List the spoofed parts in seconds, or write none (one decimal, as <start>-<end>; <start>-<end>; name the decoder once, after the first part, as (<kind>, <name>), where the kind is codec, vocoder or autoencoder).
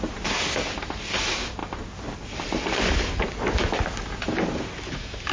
none